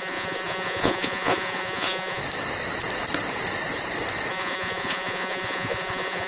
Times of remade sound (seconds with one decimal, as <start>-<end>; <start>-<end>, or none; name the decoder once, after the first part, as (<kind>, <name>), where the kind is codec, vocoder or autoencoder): 0.0-2.2 (vocoder, Vocos); 4.3-6.3

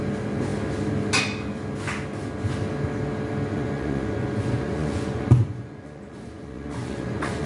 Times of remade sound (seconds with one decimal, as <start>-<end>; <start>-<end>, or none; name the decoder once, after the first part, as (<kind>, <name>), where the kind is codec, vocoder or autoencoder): 3.5-7.5 (vocoder, Vocos)